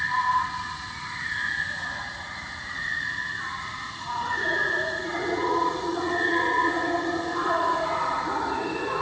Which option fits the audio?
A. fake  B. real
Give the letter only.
A